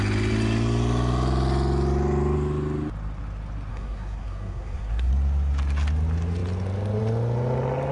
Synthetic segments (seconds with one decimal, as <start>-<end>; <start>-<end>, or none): 3.7-5.1